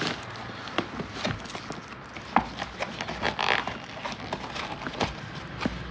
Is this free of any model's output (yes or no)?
yes